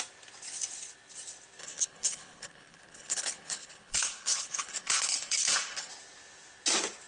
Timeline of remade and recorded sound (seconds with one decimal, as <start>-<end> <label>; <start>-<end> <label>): 0.0-1.6 recorded; 1.6-5.9 remade; 5.9-7.1 recorded